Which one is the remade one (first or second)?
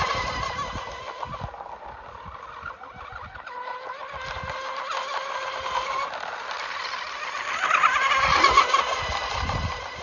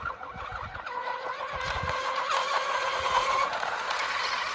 second